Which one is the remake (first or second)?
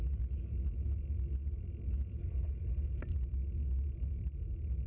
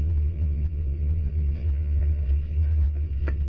second